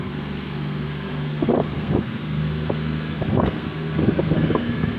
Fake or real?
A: fake